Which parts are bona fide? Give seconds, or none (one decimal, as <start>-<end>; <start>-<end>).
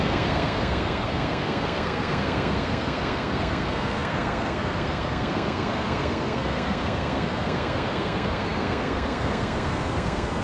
none